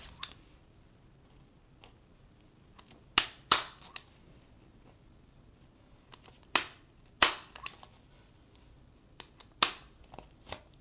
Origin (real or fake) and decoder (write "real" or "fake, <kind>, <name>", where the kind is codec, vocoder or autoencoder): real